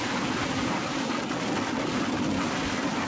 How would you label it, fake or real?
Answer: real